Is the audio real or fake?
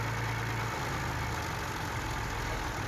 real